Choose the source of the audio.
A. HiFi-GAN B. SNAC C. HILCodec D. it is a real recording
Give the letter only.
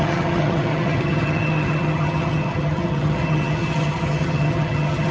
A